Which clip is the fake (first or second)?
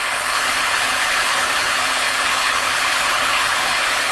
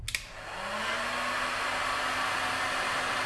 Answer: first